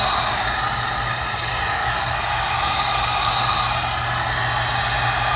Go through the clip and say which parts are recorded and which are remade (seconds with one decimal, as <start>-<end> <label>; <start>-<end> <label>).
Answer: 0.0-1.8 recorded; 1.8-3.3 remade; 3.3-5.4 recorded